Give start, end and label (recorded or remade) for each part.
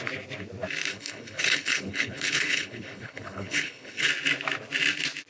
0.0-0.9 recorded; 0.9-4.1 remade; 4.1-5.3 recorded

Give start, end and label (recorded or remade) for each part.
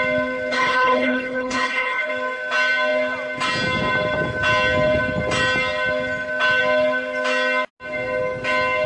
0.0-0.5 recorded; 0.5-2.1 remade; 2.1-8.9 recorded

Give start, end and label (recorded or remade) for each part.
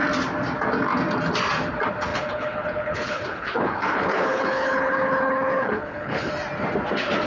0.0-2.1 recorded; 2.1-6.3 remade; 6.3-7.3 recorded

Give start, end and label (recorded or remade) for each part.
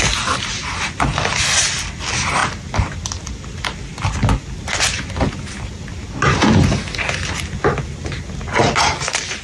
0.0-9.4 recorded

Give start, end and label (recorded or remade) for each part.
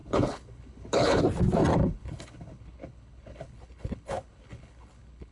0.0-1.2 remade; 1.2-1.7 recorded; 1.7-5.3 remade